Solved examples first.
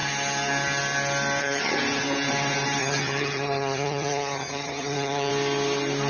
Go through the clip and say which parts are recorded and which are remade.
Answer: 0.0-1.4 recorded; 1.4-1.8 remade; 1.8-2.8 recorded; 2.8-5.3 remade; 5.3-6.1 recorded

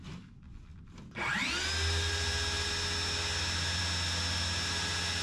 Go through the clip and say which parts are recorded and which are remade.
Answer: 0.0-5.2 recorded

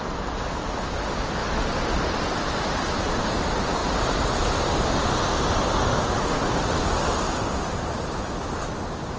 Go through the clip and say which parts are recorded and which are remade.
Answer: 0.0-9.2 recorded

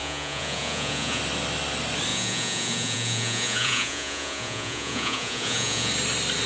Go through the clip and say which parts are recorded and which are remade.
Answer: 0.0-1.2 remade; 1.2-2.1 recorded; 2.1-5.9 remade; 5.9-6.5 recorded